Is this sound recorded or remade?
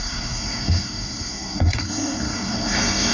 remade